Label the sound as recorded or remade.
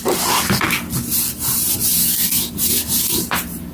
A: recorded